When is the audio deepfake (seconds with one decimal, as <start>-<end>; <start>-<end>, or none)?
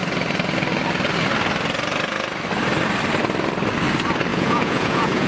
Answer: 4.3-5.3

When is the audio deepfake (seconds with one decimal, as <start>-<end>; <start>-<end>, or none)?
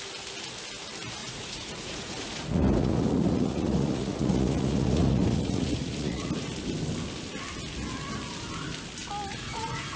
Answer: 1.2-6.3; 9.3-10.0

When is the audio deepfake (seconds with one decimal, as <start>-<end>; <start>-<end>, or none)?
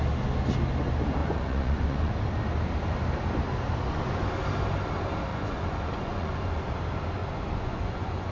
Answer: 1.2-2.1; 5.3-6.6; 7.2-8.3